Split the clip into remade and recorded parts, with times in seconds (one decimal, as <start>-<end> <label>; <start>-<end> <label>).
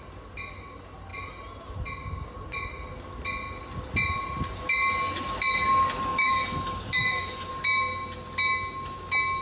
0.0-6.1 recorded; 6.1-7.5 remade; 7.5-9.4 recorded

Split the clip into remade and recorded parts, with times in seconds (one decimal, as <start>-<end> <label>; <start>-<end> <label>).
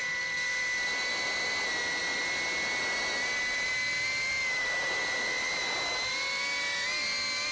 0.0-7.5 recorded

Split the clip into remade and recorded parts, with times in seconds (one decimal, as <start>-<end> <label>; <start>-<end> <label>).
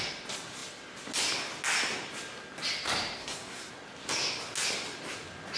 0.0-3.2 recorded; 3.2-3.7 remade; 3.7-5.6 recorded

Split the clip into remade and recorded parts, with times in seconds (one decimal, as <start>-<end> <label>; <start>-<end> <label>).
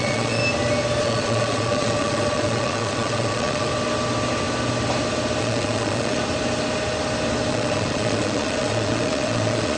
0.0-0.4 remade; 0.4-1.0 recorded; 1.0-3.7 remade; 3.7-5.4 recorded; 5.4-6.2 remade; 6.2-7.5 recorded; 7.5-9.8 remade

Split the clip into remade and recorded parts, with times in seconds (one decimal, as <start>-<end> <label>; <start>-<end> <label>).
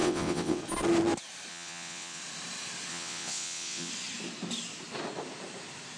0.0-0.6 remade; 0.6-1.5 recorded; 1.5-2.2 remade; 2.2-2.9 recorded; 2.9-3.9 remade; 3.9-6.0 recorded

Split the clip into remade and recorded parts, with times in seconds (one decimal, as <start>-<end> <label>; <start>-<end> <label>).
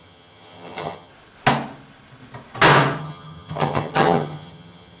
0.0-1.1 remade; 1.1-3.0 recorded; 3.0-5.0 remade